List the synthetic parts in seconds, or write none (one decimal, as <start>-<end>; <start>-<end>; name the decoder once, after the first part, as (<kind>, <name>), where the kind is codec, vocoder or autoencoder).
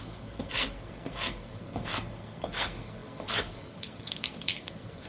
0.0-5.1 (codec, SNAC)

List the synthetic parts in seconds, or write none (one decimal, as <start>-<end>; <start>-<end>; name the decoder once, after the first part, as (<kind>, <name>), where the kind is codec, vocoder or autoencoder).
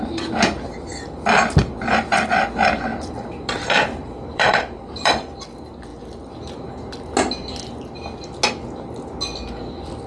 0.9-1.5 (vocoder, BigVGAN v2); 2.9-5.4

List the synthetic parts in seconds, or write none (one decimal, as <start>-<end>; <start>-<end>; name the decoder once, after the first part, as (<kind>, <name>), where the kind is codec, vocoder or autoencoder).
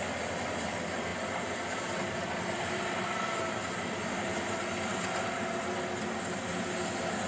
none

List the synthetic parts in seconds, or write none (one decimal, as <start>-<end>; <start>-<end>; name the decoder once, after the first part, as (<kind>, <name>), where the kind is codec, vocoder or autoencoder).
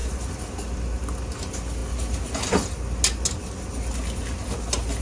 0.0-1.1 (vocoder, BigVGAN v2)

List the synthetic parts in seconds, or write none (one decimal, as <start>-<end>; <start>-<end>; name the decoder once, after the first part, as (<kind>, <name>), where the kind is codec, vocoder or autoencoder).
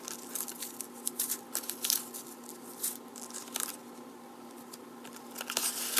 none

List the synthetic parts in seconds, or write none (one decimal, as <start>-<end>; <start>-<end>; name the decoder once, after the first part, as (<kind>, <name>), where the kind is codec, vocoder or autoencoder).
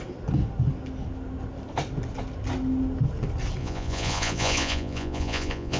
3.6-5.8 (vocoder, Vocos)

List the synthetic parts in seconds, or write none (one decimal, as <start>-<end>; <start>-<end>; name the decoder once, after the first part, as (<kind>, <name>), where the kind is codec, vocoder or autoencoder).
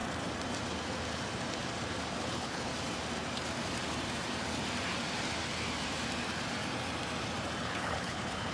2.2-2.7 (codec, HILCodec); 7.6-8.5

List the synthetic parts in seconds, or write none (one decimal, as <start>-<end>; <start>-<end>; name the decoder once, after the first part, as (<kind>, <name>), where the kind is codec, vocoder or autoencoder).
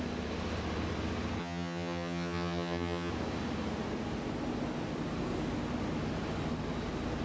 1.4-3.1 (vocoder, HiFi-GAN)